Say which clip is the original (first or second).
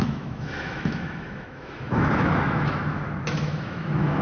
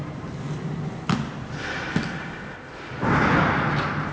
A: second